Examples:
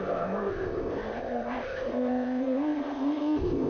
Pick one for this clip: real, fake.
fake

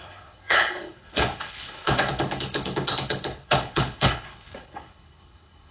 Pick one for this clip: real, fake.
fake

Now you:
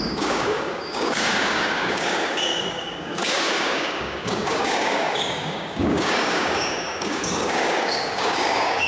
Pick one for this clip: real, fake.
fake